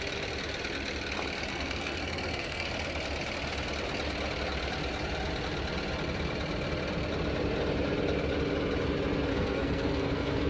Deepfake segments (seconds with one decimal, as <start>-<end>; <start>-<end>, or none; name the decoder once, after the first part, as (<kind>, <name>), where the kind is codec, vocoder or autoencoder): 1.5-2.7 (codec, SNAC); 9.3-10.5

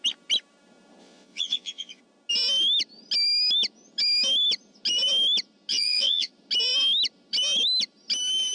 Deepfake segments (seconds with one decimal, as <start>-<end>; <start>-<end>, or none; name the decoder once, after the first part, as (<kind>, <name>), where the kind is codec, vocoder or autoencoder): 1.0-2.0 (vocoder, Vocos); 5.7-6.3